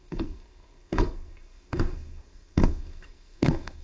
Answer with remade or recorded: remade